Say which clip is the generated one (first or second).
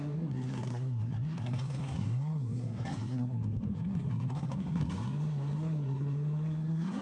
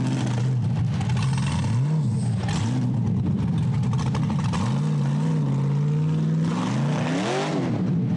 first